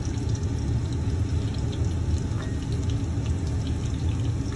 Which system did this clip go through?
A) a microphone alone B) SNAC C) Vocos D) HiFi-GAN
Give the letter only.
A